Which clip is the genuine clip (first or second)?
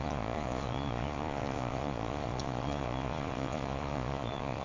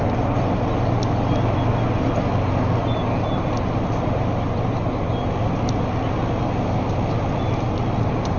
second